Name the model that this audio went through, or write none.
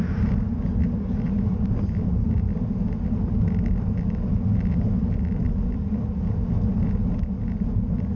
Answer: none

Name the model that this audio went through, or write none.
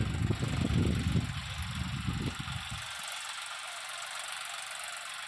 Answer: none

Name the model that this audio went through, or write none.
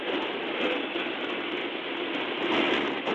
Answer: none